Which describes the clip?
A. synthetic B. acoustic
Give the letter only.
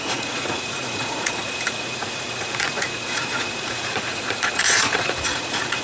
A